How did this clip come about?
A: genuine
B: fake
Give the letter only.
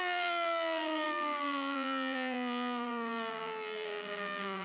B